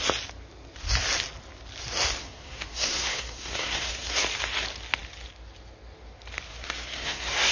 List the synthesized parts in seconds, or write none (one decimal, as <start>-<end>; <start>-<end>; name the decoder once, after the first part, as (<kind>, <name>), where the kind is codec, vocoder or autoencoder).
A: 2.2-4.2 (codec, SNAC); 6.5-7.5